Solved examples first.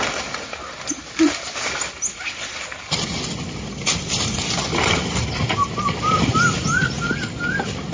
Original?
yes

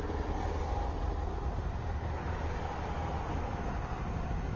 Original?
yes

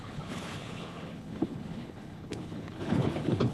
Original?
no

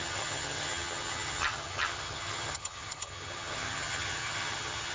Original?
no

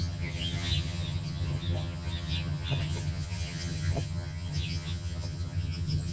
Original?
no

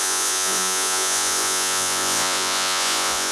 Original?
no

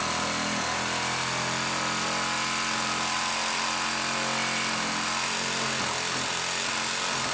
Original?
yes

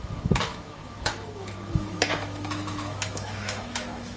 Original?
no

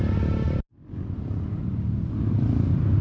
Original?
yes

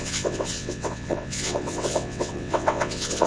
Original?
no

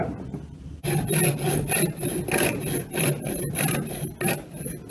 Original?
yes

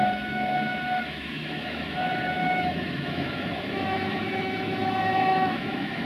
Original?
no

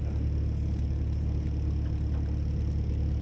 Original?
yes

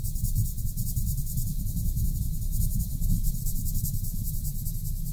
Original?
yes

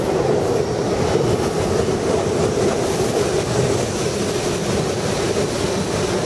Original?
yes